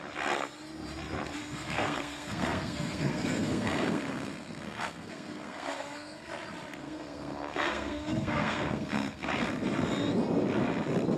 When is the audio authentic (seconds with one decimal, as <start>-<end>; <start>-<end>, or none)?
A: 0.0-1.4; 6.3-6.8; 9.3-11.2